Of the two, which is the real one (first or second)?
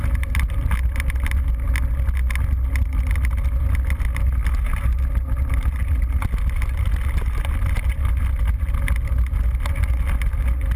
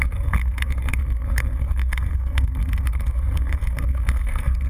first